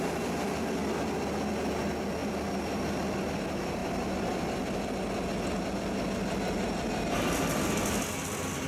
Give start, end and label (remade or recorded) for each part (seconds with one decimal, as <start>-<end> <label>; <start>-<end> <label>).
0.0-2.2 recorded; 2.2-3.2 remade; 3.2-3.8 recorded; 3.8-4.9 remade; 4.9-8.7 recorded